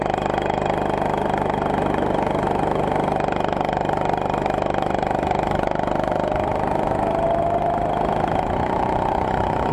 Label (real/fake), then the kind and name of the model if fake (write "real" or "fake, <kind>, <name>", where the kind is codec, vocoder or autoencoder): real